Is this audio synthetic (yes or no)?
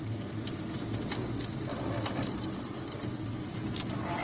no